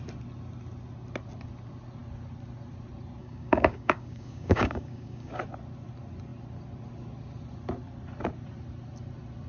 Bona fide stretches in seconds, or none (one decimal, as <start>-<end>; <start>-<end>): 0.0-3.2; 5.4-9.5